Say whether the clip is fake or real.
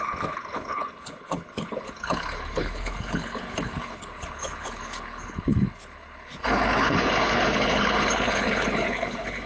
fake